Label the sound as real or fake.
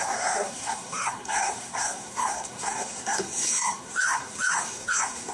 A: fake